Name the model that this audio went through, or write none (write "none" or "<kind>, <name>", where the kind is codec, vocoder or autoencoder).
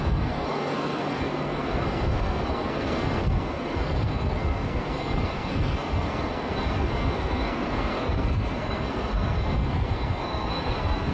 codec, SNAC